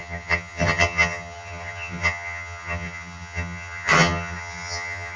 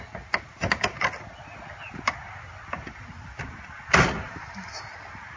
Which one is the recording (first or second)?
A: second